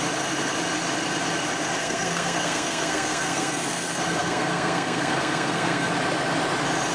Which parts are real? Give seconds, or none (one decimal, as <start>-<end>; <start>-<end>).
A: 0.0-1.8; 5.9-6.9